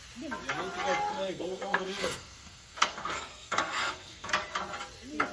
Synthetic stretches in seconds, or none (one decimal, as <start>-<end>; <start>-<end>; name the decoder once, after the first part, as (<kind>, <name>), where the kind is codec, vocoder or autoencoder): 1.1-4.3 (codec, SNAC)